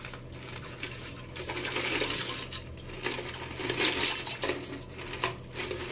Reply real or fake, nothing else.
real